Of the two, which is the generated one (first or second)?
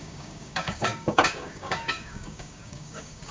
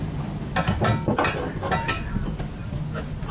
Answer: first